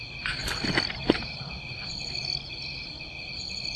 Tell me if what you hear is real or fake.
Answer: real